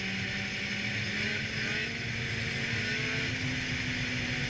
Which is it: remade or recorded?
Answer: recorded